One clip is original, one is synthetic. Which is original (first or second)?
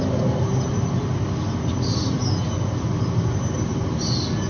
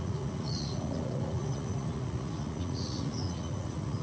first